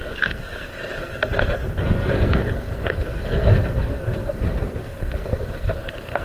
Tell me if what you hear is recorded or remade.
remade